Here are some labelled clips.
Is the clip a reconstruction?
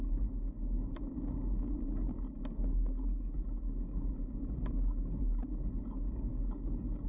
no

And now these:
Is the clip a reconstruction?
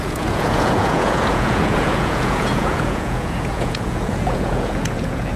yes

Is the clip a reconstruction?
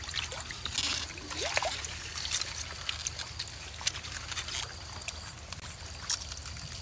no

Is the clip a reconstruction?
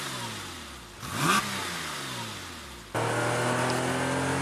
no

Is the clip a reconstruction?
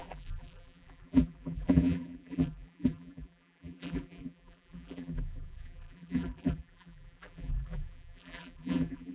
yes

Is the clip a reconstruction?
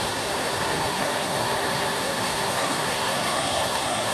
yes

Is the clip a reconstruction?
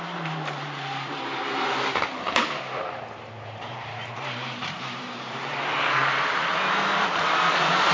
yes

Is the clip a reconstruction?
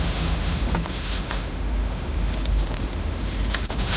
yes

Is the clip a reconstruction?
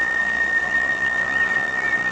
yes